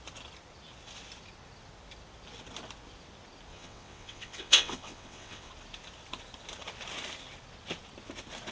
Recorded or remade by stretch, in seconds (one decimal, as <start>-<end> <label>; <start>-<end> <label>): 0.0-3.5 recorded; 3.5-5.5 remade; 5.5-8.5 recorded